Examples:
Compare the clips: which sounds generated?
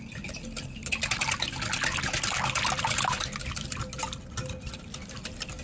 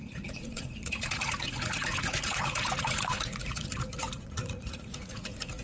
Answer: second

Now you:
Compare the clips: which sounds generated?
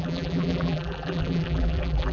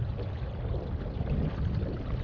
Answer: first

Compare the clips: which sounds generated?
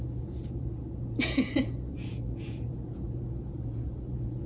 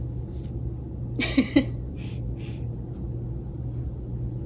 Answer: first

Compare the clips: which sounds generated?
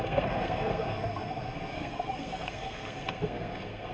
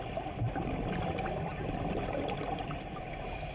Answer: first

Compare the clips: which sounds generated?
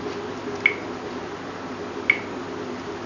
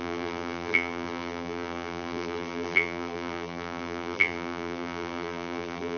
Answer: second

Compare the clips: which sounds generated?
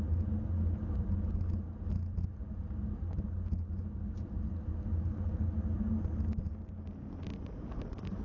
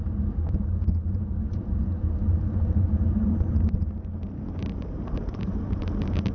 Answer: second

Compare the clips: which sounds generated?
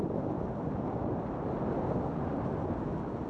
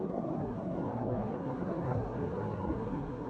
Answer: second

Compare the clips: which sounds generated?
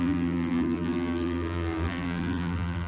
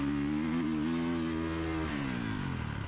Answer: first